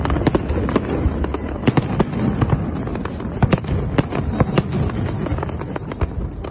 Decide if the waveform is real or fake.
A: real